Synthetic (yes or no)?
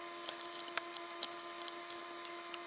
yes